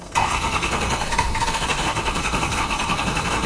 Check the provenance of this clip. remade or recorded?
remade